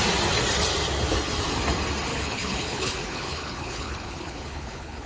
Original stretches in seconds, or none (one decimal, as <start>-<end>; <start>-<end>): 0.0-2.1